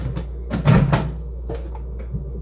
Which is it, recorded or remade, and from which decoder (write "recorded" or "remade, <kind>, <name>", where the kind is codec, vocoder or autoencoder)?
recorded